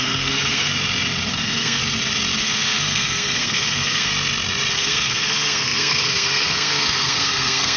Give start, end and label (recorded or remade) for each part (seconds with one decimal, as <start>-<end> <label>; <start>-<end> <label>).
0.0-0.7 remade; 0.7-1.3 recorded; 1.3-1.8 remade; 1.8-2.4 recorded; 2.4-4.1 remade; 4.1-4.7 recorded; 4.7-7.8 remade